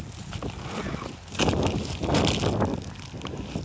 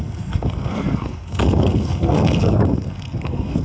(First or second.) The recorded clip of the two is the first